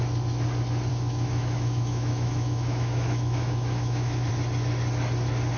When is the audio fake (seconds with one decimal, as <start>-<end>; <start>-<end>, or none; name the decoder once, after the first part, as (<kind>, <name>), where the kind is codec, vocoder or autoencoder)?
0.9-4.3 (autoencoder, DAC-VAE)